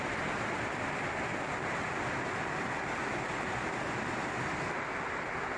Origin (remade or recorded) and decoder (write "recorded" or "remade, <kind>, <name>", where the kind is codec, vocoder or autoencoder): recorded